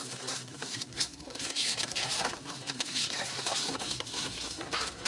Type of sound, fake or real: fake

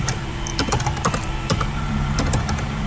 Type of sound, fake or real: fake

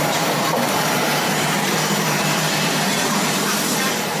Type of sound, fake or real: fake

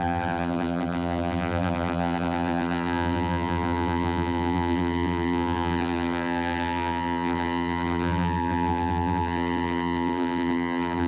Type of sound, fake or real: fake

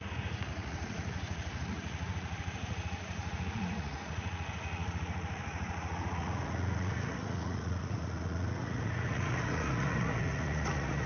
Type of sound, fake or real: fake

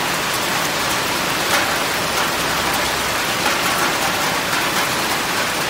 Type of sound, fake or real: real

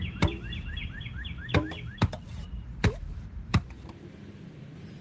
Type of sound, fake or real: fake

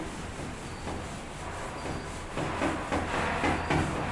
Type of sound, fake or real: real